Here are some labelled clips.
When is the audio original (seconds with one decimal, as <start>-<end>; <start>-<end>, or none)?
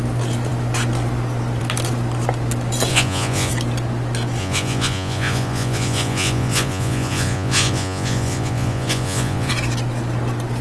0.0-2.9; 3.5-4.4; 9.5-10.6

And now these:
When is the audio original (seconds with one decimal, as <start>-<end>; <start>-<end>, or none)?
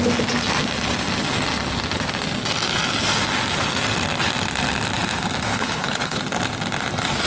0.0-5.5; 6.2-7.3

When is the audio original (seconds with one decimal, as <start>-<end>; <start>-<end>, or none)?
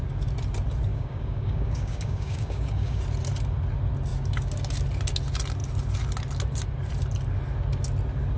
0.0-0.9; 3.0-8.4